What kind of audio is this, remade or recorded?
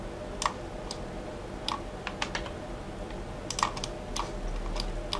recorded